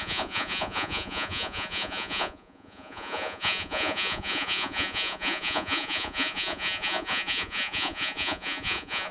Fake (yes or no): yes